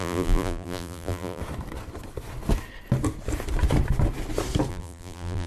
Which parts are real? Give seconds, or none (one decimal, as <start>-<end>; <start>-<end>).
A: 1.4-4.7